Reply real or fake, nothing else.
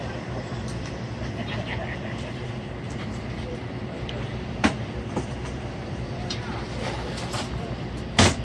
fake